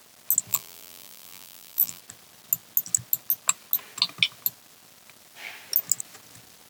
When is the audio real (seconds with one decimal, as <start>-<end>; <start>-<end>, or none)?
0.0-0.5; 2.0-6.7